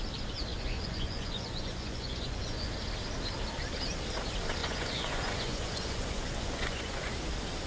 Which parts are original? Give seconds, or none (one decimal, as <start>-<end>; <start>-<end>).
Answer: 0.0-0.5; 2.7-4.6; 7.1-7.7